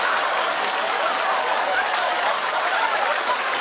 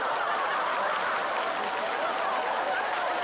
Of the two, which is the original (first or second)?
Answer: second